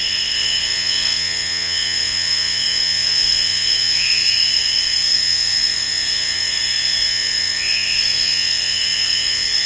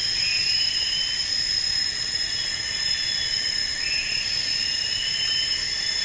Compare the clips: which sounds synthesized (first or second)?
first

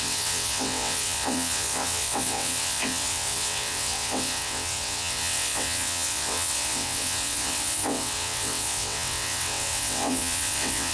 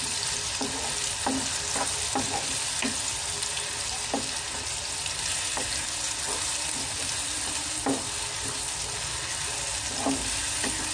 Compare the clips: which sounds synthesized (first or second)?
first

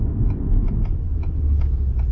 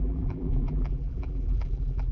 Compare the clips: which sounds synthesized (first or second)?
second